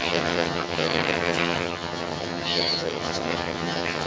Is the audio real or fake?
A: fake